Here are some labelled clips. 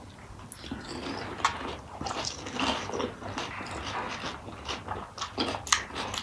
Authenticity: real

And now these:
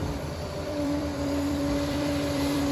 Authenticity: fake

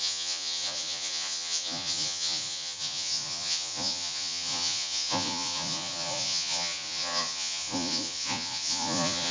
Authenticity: fake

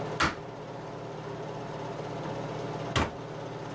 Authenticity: real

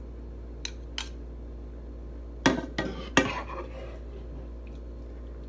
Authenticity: real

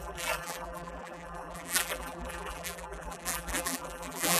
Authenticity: fake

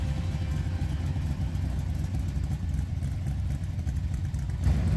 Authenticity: real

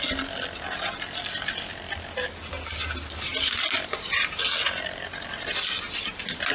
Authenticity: real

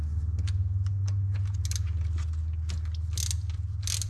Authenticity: real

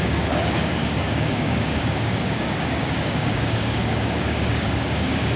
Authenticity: fake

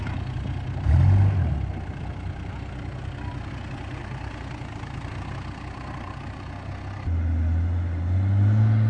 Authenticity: real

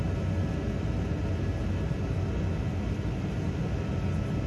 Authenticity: real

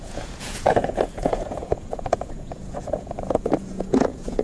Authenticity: fake